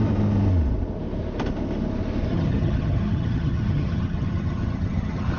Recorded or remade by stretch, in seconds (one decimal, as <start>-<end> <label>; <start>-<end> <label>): 0.0-2.3 recorded; 2.3-5.4 remade